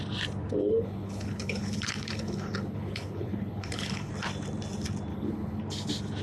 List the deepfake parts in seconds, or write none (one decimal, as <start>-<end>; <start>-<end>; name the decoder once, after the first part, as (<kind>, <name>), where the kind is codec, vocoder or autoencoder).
0.6-4.1 (codec, HILCodec); 5.1-5.6